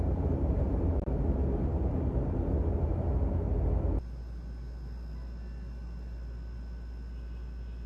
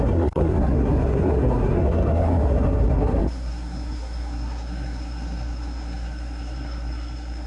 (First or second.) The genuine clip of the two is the first